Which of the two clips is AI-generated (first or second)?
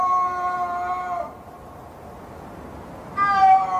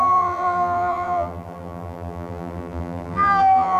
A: second